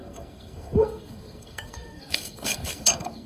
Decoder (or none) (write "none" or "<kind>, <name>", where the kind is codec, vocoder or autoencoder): codec, SNAC